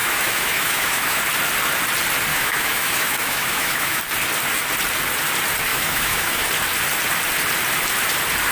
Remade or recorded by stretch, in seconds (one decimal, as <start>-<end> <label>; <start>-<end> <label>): 0.0-1.2 remade; 1.2-2.3 recorded; 2.3-4.0 remade; 4.0-5.7 recorded; 5.7-6.5 remade; 6.5-8.5 recorded